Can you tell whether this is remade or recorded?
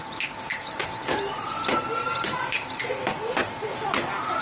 recorded